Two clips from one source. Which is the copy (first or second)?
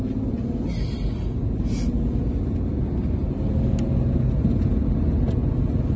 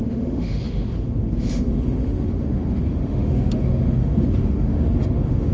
second